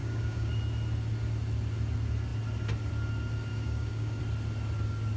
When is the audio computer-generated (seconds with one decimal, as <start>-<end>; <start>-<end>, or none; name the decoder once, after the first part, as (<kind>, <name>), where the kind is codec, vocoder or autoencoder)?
0.0-0.6 (codec, DAC); 3.5-4.2

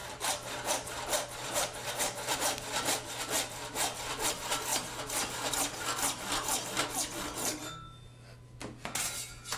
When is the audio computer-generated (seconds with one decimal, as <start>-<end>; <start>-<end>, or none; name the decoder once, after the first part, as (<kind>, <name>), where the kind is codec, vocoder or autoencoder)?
0.0-4.3 (vocoder, BigVGAN v2)

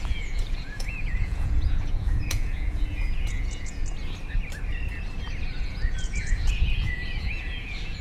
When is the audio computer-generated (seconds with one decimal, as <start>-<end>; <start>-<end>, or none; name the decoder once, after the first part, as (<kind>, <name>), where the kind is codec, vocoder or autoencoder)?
0.0-3.8 (vocoder, Vocos); 5.6-8.0